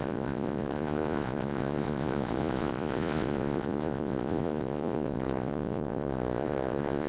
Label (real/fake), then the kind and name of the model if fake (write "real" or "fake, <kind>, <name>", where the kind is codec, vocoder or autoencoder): fake, vocoder, Vocos